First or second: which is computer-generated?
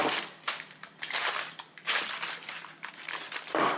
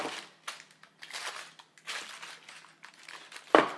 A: first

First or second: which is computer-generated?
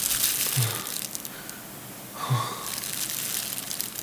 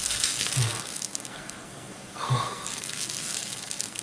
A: second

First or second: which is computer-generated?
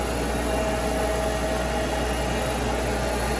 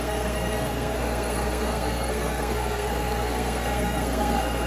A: second